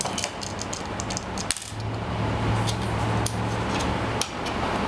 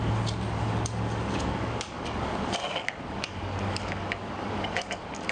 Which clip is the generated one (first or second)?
second